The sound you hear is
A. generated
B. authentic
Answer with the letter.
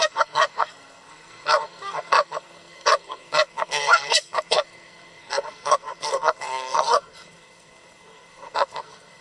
A